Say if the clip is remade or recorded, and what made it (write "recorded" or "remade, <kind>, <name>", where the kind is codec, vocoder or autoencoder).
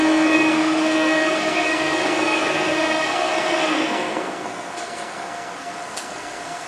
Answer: remade, codec, SNAC